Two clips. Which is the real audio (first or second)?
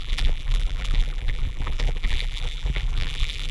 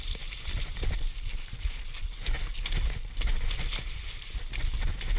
second